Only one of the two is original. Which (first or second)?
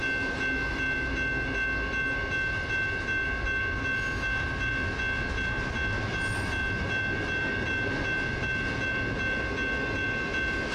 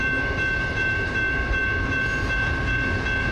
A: first